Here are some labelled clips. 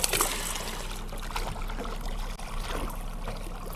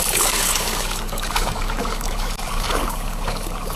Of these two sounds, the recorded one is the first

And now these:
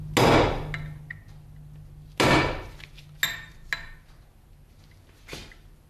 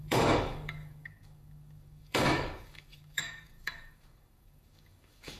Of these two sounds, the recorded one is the first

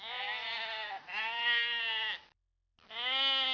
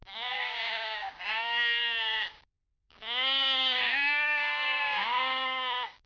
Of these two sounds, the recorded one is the first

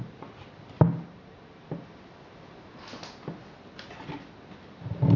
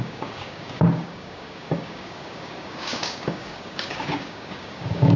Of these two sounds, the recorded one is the first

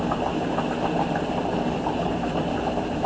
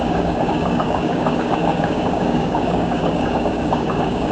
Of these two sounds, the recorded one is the first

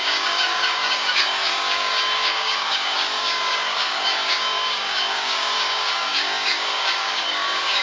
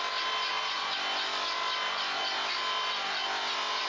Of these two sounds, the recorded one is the second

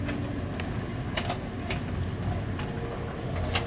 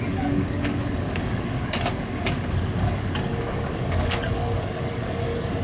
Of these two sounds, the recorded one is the first